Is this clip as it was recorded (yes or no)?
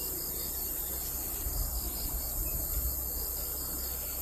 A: yes